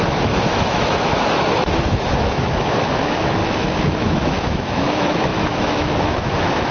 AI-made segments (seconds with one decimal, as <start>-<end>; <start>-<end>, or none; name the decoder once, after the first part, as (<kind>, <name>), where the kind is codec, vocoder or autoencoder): 0.0-6.7 (autoencoder, DAC-VAE)